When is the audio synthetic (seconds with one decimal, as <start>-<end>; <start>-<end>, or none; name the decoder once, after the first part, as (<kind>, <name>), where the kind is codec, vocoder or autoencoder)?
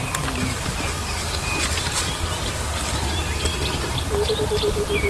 none